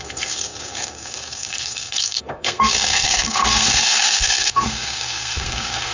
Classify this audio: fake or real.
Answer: fake